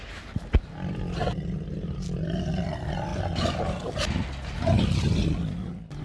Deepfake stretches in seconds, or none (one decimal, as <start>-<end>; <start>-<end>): none